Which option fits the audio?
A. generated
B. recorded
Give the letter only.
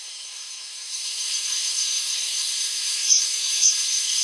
A